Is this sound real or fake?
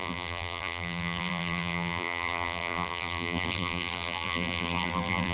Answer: fake